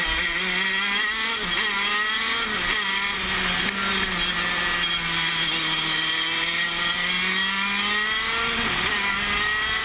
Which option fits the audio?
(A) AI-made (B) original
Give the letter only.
B